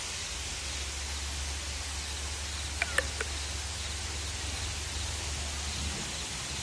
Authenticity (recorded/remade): recorded